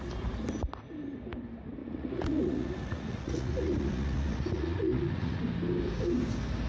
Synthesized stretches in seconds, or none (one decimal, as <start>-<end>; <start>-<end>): 1.8-5.4